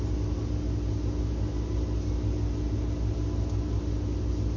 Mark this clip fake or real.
real